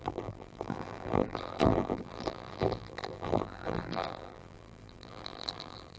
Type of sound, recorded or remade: remade